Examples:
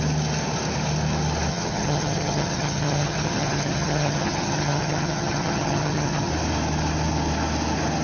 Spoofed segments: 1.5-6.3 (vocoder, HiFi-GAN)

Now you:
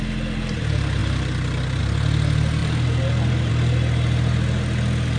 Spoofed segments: 2.6-3.5 (vocoder, BigVGAN v2)

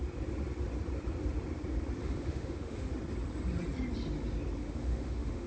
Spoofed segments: 2.0-2.9 (autoencoder, DAC-VAE); 4.6-5.5